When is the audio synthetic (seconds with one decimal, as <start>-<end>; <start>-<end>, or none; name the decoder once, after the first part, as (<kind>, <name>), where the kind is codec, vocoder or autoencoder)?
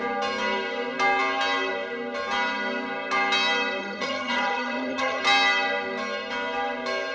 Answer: 3.8-5.2 (vocoder, HiFi-GAN)